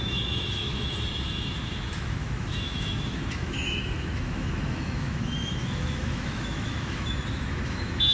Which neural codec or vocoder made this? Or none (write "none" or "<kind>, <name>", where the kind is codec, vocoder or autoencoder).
autoencoder, DAC-VAE